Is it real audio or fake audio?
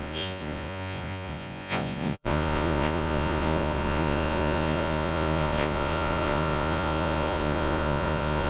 fake